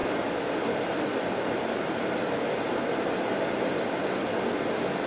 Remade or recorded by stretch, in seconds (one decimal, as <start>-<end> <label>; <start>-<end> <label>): 0.0-5.1 recorded